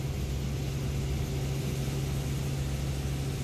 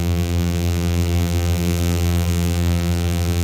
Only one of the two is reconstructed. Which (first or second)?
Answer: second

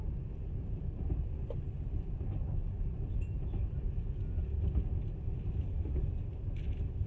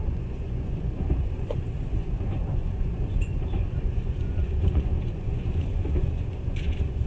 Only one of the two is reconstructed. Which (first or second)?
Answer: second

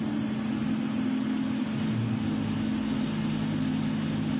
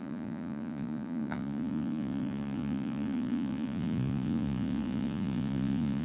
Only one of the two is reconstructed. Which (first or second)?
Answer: second